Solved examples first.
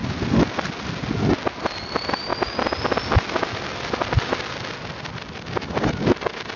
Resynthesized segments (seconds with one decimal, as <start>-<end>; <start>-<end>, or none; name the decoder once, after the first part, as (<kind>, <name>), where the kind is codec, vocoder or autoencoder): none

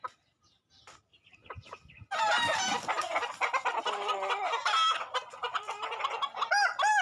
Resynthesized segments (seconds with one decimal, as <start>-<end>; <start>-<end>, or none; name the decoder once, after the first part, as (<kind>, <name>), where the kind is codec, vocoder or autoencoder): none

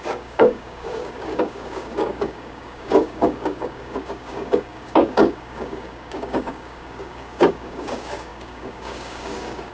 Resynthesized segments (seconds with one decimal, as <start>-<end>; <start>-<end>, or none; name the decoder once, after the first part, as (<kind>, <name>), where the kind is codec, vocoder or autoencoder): 0.0-9.7 (codec, DAC)